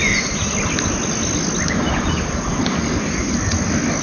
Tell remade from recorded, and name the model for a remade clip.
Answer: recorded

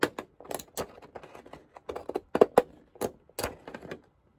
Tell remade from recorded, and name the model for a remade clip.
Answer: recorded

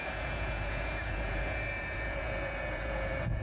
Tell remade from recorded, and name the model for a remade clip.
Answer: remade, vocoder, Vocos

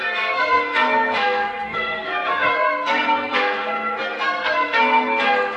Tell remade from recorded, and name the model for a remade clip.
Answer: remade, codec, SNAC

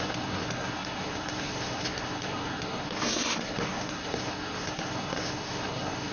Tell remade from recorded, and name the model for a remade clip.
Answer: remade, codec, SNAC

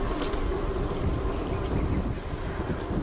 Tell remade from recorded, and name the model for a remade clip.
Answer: recorded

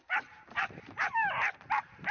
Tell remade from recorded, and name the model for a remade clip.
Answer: remade, vocoder, BigVGAN v2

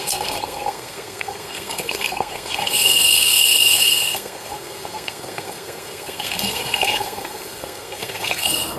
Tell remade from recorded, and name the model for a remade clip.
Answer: remade, codec, SNAC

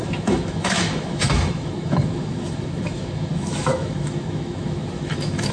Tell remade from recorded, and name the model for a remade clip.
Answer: remade, autoencoder, DAC-VAE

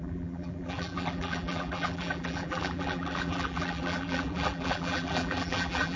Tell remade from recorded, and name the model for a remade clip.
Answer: remade, vocoder, BigVGAN v2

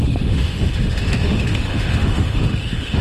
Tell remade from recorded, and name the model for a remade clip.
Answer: remade, autoencoder, DAC-VAE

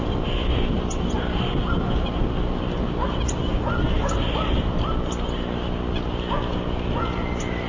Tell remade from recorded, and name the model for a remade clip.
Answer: recorded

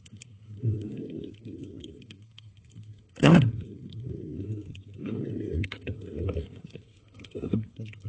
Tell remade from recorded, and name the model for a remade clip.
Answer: remade, codec, SNAC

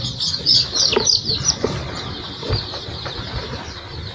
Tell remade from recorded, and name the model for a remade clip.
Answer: recorded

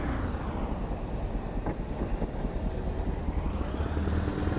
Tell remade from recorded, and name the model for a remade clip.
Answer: recorded